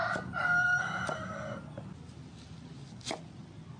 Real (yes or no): yes